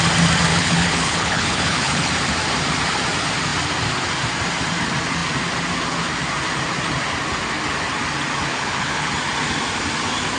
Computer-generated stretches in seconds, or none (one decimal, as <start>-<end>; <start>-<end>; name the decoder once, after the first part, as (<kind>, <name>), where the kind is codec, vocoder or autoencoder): 0.5-2.1 (codec, HILCodec); 8.5-9.1